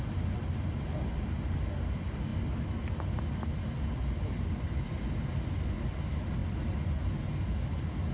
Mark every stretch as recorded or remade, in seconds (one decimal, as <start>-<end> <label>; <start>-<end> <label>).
0.0-8.1 recorded